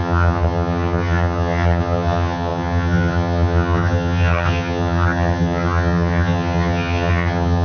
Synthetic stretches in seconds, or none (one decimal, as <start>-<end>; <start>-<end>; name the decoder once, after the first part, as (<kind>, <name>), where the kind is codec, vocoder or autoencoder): 0.0-7.6 (vocoder, HiFi-GAN)